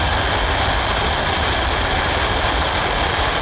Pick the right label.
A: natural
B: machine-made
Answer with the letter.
A